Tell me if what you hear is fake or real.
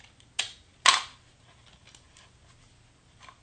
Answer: real